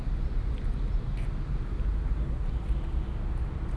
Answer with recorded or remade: recorded